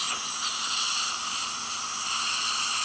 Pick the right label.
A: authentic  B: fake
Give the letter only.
A